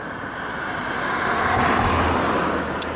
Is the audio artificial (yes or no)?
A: no